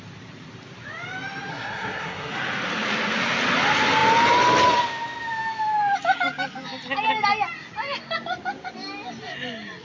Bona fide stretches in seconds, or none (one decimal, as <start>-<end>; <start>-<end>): 0.0-1.5; 2.3-9.8